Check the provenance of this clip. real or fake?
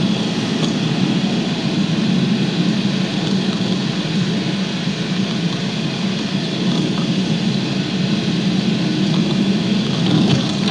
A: real